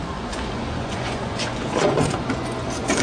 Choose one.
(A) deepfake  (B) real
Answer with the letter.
A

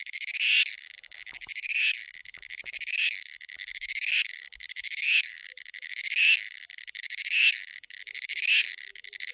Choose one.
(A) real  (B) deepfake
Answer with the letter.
B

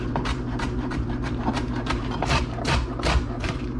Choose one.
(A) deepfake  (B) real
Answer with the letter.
A